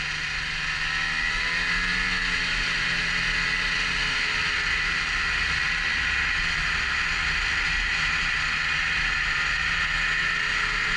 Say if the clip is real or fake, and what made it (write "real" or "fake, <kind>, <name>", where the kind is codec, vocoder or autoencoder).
real